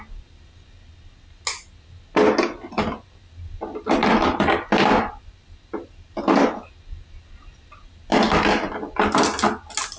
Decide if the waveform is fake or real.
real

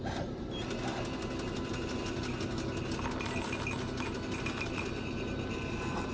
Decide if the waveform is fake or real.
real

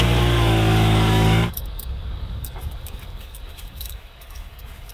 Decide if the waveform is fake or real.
fake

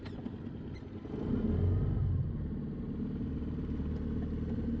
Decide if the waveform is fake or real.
real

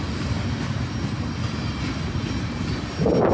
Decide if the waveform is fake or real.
real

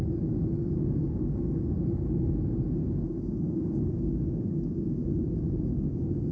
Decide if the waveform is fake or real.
fake